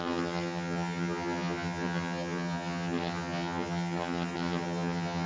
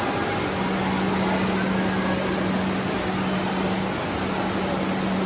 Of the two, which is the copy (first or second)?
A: first